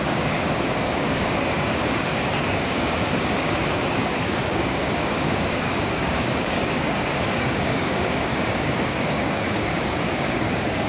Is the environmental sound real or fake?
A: fake